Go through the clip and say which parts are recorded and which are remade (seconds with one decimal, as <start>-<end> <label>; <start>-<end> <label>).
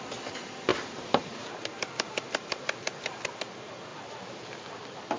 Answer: 0.0-0.7 recorded; 0.7-3.5 remade; 3.5-3.9 recorded; 3.9-4.8 remade; 4.8-5.2 recorded